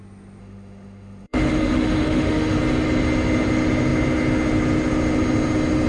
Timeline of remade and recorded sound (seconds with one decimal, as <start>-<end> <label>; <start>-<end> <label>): 0.0-0.4 recorded; 0.4-2.6 remade; 2.6-5.9 recorded